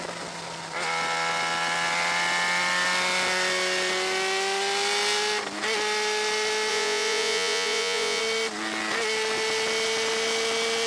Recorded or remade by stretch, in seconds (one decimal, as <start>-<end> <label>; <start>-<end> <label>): 0.0-6.7 recorded; 6.7-8.2 remade; 8.2-10.9 recorded